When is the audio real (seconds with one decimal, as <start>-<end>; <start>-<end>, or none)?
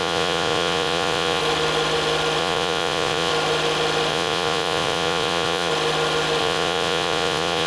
1.4-2.4; 3.3-4.1; 5.7-6.4